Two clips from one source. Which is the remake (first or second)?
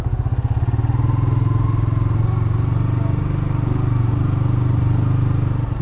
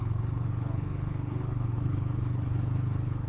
second